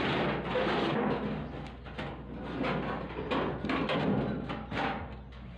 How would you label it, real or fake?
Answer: real